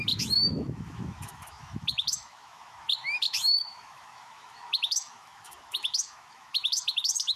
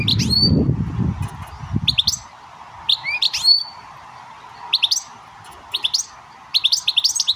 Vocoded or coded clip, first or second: first